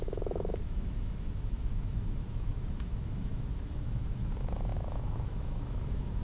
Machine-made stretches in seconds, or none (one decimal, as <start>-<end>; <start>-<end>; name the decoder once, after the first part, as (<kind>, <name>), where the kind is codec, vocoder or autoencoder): 0.0-6.2 (autoencoder, DAC-VAE)